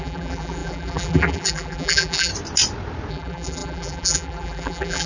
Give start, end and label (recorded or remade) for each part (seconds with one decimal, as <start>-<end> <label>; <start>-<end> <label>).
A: 0.0-2.3 remade; 2.3-3.1 recorded; 3.1-5.1 remade